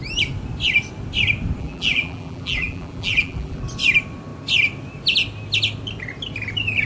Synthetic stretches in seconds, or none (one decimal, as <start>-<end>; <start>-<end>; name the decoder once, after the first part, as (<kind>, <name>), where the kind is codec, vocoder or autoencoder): 1.6-3.6 (vocoder, BigVGAN v2)

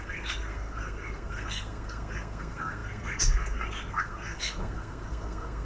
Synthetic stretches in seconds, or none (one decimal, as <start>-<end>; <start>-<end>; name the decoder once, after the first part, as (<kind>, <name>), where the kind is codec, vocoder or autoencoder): 0.0-5.6 (codec, SNAC)

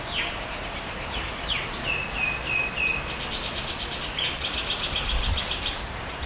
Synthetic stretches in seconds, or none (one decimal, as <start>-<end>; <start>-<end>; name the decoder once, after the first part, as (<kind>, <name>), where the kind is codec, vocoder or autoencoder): 0.0-1.8 (vocoder, BigVGAN v2); 4.0-6.3

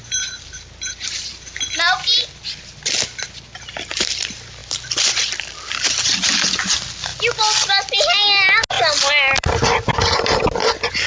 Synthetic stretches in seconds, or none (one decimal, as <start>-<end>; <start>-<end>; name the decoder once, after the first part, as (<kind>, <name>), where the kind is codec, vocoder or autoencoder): none

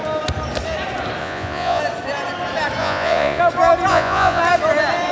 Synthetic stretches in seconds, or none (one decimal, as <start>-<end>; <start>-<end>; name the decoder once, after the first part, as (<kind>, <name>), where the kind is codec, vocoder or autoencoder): 1.2-1.8 (vocoder, Vocos); 2.8-3.4; 3.9-4.4

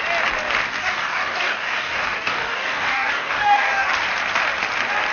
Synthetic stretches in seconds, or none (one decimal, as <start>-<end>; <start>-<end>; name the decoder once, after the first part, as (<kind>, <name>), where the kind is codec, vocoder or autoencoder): 0.8-3.9 (codec, DAC)